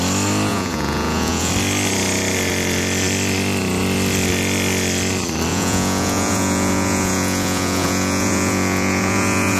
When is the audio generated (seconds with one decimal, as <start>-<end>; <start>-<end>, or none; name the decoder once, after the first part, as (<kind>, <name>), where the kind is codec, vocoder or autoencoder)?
0.5-1.5 (vocoder, Vocos); 5.5-9.6